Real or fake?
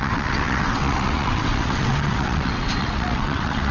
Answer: fake